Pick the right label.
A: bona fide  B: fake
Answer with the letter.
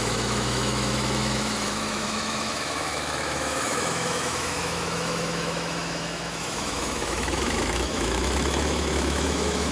B